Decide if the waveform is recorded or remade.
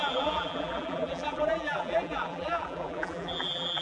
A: remade